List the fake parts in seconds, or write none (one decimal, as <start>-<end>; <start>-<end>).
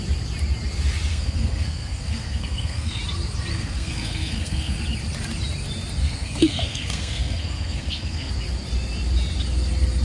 1.1-3.0; 3.5-4.8; 6.0-8.3